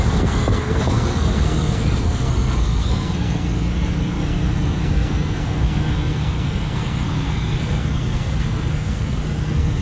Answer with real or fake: fake